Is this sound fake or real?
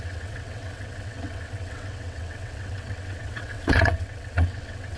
fake